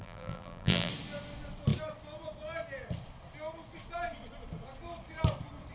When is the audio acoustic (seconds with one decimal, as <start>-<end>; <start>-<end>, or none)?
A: 0.9-5.7